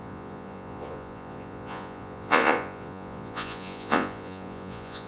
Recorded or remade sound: remade